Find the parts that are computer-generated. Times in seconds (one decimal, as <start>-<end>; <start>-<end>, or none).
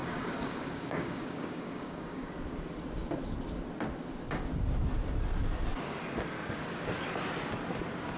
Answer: 0.0-2.3